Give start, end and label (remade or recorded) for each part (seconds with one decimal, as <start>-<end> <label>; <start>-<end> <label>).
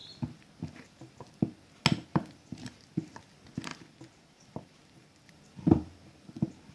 0.0-6.7 recorded